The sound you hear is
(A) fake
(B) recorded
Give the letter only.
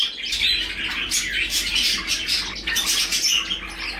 B